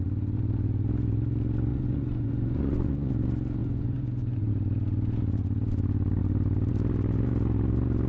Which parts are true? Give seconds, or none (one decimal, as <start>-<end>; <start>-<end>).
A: 0.0-1.7; 3.1-3.6; 4.5-8.1